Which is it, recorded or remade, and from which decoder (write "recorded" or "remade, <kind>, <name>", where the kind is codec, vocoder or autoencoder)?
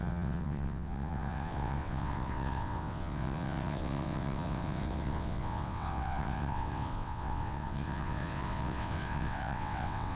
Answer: remade, vocoder, WaveNeXt